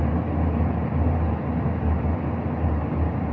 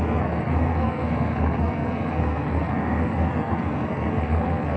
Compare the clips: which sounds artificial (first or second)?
second